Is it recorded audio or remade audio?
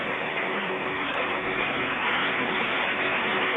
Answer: remade